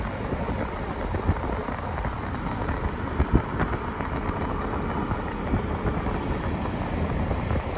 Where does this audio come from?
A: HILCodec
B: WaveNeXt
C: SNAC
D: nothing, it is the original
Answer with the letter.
D